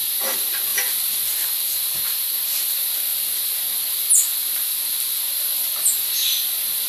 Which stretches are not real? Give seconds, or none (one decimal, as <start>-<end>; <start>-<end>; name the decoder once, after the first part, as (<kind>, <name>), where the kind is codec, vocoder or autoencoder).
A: 0.7-2.0 (vocoder, BigVGAN v2); 3.1-3.6; 4.4-5.2